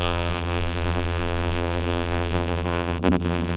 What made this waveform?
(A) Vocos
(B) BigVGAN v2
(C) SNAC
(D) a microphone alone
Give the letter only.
B